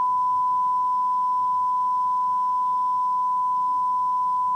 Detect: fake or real real